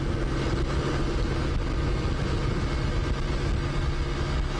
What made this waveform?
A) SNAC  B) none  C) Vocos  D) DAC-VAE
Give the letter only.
B